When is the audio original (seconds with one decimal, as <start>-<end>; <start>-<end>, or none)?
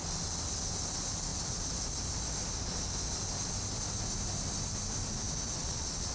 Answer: 0.0-5.6